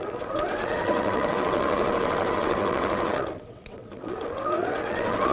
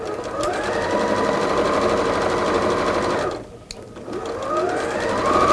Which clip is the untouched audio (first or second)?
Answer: second